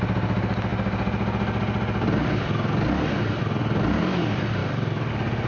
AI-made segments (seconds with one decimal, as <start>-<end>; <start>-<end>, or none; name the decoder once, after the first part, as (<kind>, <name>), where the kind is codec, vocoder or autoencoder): none